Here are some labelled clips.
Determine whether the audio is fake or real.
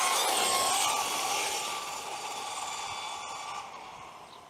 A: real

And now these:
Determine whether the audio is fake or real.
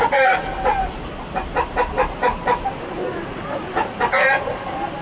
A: real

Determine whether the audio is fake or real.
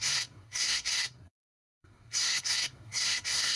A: fake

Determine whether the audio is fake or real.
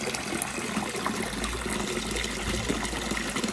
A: real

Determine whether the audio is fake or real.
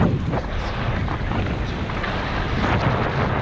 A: real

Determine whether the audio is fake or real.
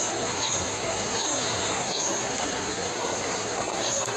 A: fake